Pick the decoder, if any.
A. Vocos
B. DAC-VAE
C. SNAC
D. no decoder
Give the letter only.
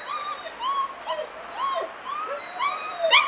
D